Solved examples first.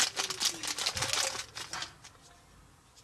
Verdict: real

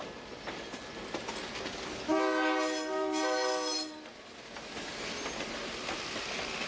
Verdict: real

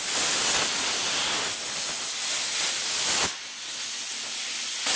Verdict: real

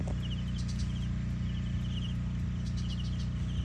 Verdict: real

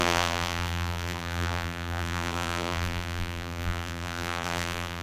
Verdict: fake